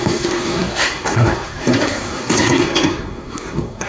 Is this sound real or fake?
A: fake